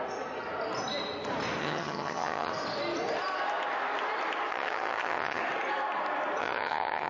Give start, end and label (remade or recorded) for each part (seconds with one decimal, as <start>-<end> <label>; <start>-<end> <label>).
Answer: 0.0-1.6 recorded; 1.6-2.5 remade; 2.5-4.5 recorded; 4.5-5.4 remade; 5.4-6.4 recorded; 6.4-7.1 remade